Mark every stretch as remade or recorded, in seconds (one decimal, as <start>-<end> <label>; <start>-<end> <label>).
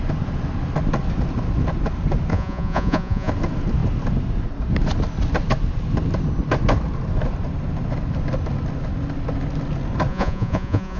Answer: 0.0-2.3 recorded; 2.3-3.3 remade; 3.3-10.1 recorded; 10.1-11.0 remade